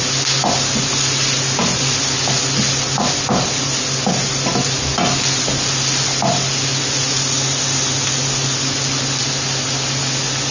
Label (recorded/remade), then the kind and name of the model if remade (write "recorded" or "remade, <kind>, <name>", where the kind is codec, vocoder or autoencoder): recorded